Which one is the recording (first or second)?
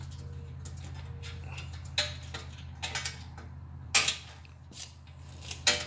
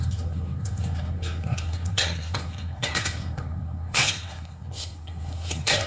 first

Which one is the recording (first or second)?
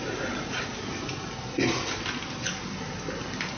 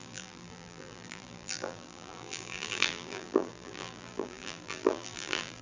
first